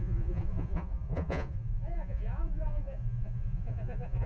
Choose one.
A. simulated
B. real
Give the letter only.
A